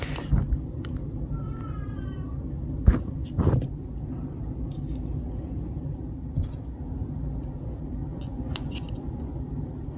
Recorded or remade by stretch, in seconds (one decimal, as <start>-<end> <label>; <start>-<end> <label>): 0.0-8.1 recorded; 8.1-9.4 remade; 9.4-10.0 recorded